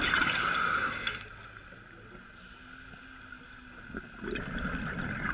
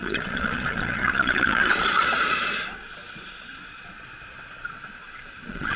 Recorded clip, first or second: first